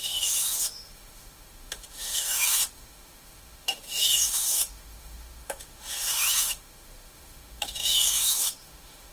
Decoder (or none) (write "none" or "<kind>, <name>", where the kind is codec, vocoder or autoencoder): autoencoder, DAC-VAE